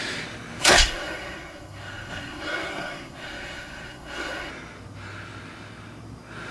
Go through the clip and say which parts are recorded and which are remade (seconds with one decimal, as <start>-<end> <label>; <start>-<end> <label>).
0.0-0.6 recorded; 0.6-4.5 remade; 4.5-6.5 recorded